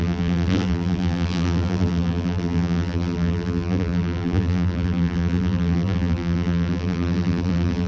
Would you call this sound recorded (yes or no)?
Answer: no